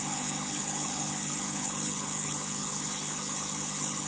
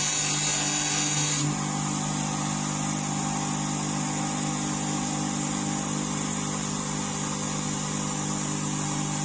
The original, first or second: second